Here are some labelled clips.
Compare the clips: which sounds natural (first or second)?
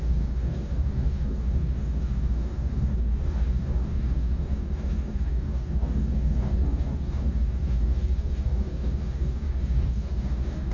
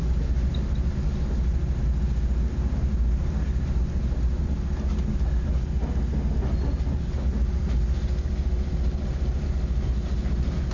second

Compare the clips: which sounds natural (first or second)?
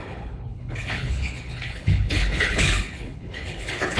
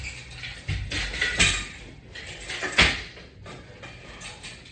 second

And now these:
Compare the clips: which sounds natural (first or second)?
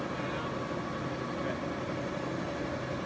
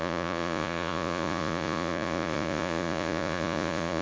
first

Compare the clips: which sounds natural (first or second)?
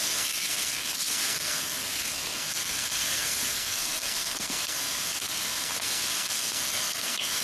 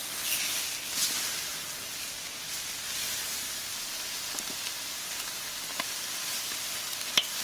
second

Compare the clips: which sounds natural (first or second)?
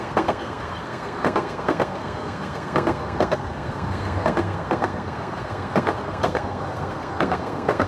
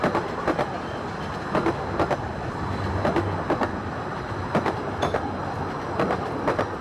second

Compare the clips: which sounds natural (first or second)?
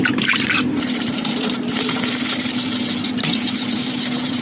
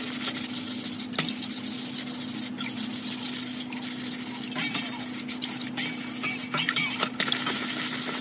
second